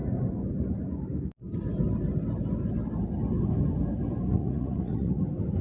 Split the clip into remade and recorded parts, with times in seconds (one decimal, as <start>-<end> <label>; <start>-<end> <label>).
0.0-4.3 recorded; 4.3-5.1 remade; 5.1-5.6 recorded

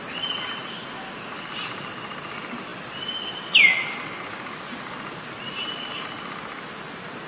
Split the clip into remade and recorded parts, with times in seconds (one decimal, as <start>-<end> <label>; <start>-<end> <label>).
0.0-7.3 recorded

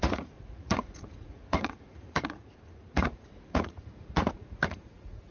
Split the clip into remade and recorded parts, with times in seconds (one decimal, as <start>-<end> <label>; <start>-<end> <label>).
0.0-5.3 remade

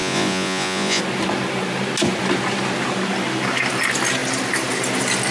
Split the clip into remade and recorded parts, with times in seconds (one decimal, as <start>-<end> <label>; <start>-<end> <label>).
0.0-1.0 remade; 1.0-5.3 recorded

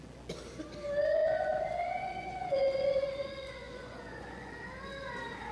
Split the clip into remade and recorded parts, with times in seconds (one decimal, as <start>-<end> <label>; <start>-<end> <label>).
0.0-1.2 recorded; 1.2-4.5 remade; 4.5-5.5 recorded